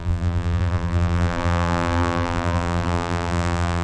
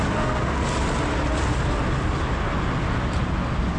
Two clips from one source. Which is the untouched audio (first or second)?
second